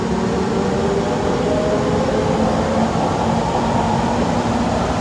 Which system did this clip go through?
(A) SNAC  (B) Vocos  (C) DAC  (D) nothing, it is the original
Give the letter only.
D